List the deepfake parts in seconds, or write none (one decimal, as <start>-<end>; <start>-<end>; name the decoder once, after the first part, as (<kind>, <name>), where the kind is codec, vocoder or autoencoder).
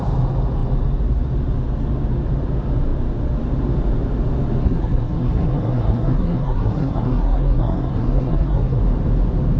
4.6-8.8 (codec, SNAC)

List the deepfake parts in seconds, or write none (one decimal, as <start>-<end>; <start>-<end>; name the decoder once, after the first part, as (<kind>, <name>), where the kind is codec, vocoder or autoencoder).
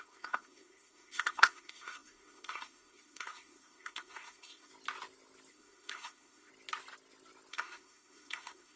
0.0-4.7 (codec, SNAC); 5.5-6.5; 7.5-8.8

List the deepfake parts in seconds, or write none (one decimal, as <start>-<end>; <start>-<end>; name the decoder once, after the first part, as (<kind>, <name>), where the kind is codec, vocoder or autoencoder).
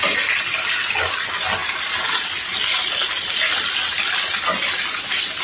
none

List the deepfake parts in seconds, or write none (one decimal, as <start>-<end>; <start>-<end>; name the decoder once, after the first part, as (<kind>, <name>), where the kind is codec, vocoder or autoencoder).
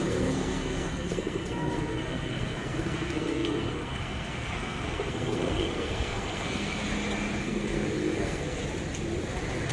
0.0-6.8 (codec, SNAC); 7.4-8.6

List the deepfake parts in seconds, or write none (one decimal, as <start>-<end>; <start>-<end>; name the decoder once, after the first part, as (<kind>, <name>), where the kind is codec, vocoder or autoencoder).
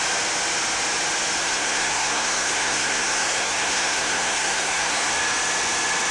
1.4-5.1 (codec, SNAC)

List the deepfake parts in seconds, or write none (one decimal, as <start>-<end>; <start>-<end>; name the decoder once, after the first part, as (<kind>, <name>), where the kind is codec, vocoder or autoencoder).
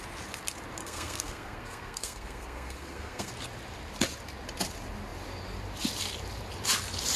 0.8-3.3 (codec, SNAC)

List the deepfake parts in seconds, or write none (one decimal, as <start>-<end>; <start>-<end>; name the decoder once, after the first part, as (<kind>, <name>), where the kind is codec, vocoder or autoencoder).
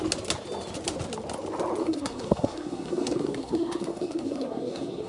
1.8-5.1 (codec, SNAC)